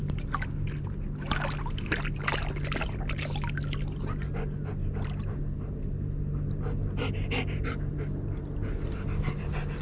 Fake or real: real